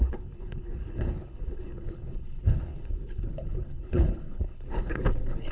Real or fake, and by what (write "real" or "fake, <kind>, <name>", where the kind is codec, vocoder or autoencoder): fake, codec, HILCodec